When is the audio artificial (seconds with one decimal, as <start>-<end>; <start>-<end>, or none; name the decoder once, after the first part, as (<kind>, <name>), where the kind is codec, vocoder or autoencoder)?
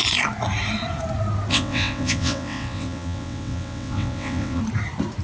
1.5-4.6 (vocoder, WaveNeXt)